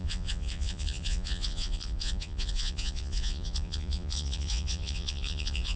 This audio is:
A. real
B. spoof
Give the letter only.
B